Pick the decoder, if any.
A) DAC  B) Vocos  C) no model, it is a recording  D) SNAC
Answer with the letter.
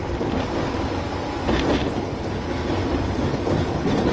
C